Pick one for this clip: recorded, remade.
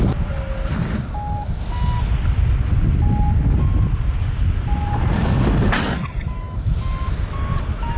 recorded